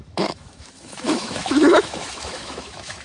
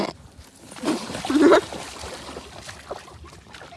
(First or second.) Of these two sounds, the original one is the second